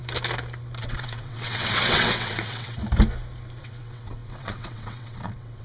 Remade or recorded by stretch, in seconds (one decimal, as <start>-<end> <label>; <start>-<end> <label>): 0.0-0.8 recorded; 0.8-2.8 remade; 2.8-3.6 recorded; 3.6-5.6 remade